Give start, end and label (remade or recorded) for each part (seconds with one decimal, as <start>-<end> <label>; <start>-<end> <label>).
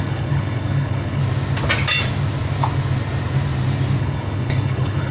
0.0-1.2 remade; 1.2-4.0 recorded; 4.0-5.1 remade